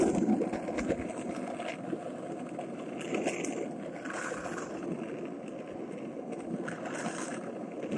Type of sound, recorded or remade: recorded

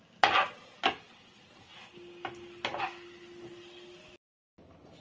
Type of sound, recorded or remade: recorded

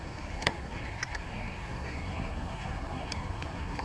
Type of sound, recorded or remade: remade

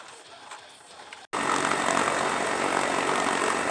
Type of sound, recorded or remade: recorded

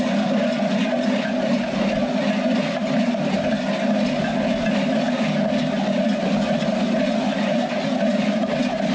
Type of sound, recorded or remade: recorded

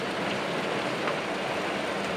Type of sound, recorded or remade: recorded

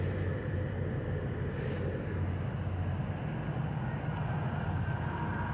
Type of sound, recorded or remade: recorded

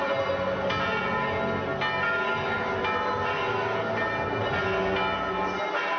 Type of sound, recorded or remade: recorded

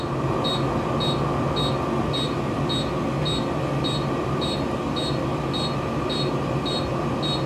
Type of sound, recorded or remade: recorded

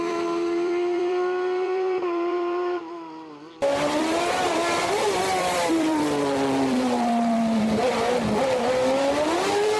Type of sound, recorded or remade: remade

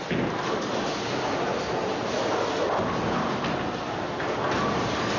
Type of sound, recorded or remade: recorded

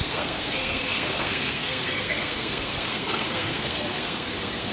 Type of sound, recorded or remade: remade